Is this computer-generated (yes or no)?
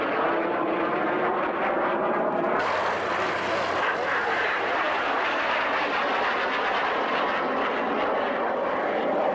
no